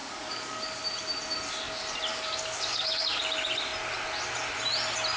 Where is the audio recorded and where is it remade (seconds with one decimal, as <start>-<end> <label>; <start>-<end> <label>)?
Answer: 0.0-0.8 remade; 0.8-2.1 recorded; 2.1-3.2 remade; 3.2-5.2 recorded